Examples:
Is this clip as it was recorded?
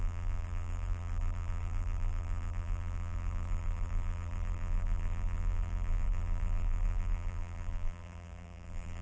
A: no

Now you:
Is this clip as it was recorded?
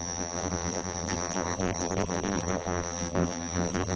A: no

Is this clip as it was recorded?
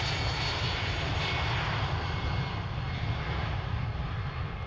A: yes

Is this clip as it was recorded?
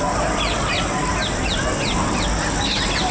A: yes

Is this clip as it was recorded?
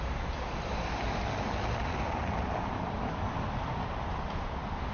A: no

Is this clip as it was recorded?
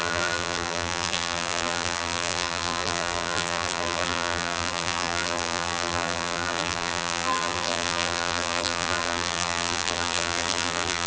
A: no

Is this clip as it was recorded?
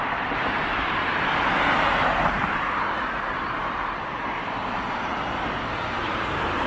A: no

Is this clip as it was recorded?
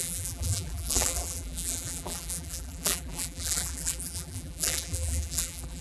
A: no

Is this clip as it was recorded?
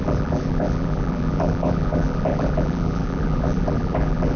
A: no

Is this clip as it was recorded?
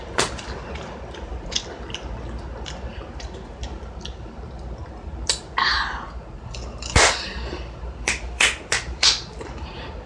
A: no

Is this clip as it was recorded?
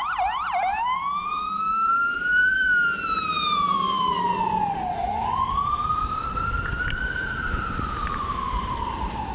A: no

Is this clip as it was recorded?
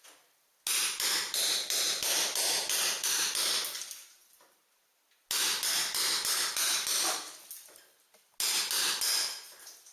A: yes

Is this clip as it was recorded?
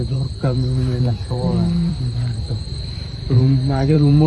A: no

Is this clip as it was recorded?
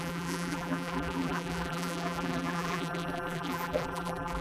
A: no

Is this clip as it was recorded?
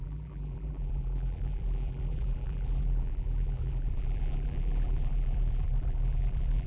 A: no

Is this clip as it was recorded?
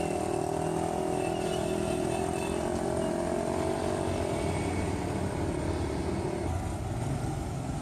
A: yes